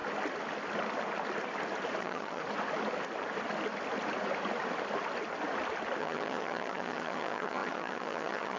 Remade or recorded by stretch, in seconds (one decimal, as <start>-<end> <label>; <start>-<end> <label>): 0.0-2.0 recorded; 2.0-2.4 remade; 2.4-6.0 recorded; 6.0-8.6 remade